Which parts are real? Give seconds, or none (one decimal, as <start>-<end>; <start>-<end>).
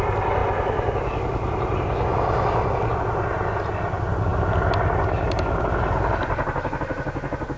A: 0.0-7.6